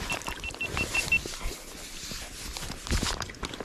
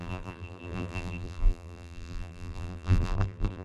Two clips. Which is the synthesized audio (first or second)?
second